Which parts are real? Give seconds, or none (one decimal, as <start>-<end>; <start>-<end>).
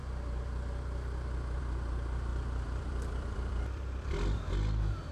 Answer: 0.0-2.3